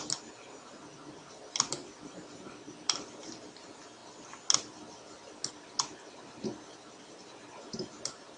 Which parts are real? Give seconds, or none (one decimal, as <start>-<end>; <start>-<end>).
0.0-1.8; 3.2-8.4